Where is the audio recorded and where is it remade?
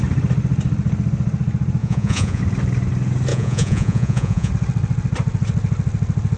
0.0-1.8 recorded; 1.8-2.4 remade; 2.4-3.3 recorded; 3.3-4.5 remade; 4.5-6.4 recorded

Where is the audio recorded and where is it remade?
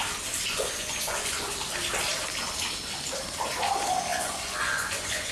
0.0-0.5 recorded; 0.5-1.5 remade; 1.5-4.1 recorded; 4.1-5.3 remade